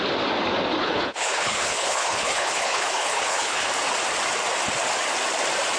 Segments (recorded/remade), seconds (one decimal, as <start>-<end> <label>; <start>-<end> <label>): 0.0-0.8 recorded; 0.8-3.7 remade; 3.7-5.8 recorded

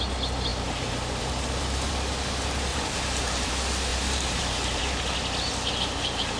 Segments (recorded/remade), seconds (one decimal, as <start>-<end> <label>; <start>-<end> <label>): 0.0-0.5 recorded; 0.5-1.9 remade; 1.9-2.7 recorded; 2.7-3.5 remade; 3.5-3.9 recorded; 3.9-5.0 remade; 5.0-6.4 recorded

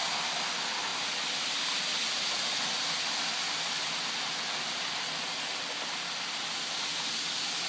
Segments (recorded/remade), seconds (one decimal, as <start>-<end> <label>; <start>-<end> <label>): 0.0-7.7 recorded

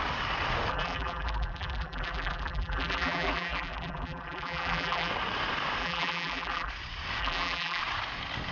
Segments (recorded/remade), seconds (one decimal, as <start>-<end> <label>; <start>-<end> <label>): 0.0-0.7 recorded; 0.7-5.1 remade; 5.1-5.8 recorded; 5.8-6.7 remade; 6.7-7.2 recorded; 7.2-7.8 remade; 7.8-8.5 recorded

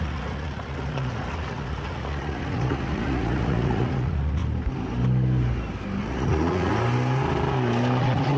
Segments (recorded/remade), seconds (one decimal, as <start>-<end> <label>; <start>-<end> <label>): 0.0-4.4 remade; 4.4-6.0 recorded; 6.0-6.7 remade; 6.7-8.0 recorded; 8.0-8.4 remade

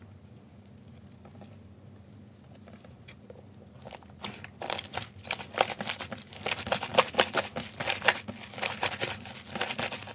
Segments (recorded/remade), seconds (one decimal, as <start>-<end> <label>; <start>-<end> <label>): 0.0-10.1 recorded

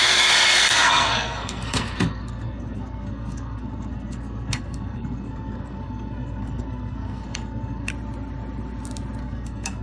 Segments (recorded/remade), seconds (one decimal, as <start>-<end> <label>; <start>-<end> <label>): 0.0-7.9 remade; 7.9-9.2 recorded; 9.2-9.8 remade

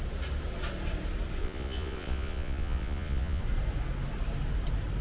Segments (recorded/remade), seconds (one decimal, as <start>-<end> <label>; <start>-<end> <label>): 0.0-1.4 recorded; 1.4-3.4 remade; 3.4-5.0 recorded